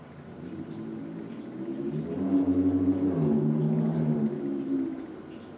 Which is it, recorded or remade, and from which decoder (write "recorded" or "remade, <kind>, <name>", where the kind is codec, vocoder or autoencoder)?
recorded